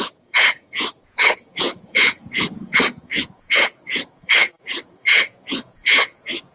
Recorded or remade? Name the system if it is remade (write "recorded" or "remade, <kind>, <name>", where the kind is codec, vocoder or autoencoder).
remade, vocoder, Vocos